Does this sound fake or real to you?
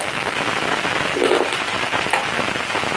real